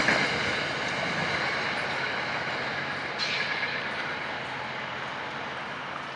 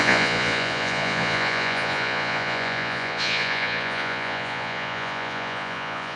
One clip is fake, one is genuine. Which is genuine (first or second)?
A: first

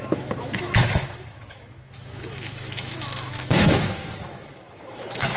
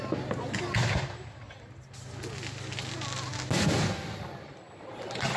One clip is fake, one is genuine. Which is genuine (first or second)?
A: second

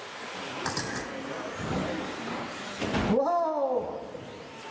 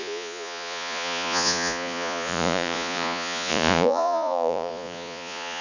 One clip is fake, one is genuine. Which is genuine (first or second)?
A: first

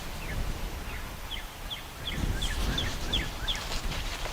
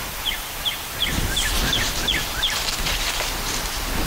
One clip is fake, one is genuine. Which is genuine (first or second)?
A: second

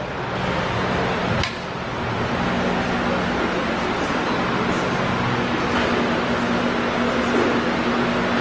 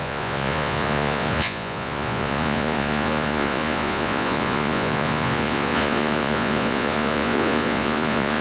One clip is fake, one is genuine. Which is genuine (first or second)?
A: first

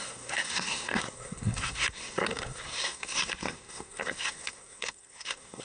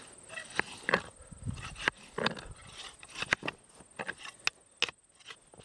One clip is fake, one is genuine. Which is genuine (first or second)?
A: second